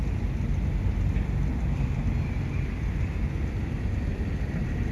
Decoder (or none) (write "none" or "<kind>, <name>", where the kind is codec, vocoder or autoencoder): none